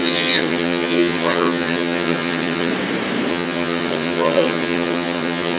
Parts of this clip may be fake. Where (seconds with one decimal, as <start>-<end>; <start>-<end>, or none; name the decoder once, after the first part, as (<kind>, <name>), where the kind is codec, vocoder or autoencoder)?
0.0-2.7 (vocoder, HiFi-GAN); 3.3-5.6